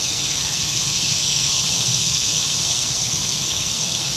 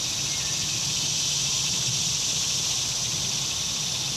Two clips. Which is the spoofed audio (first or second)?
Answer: first